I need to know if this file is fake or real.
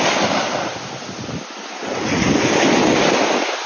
real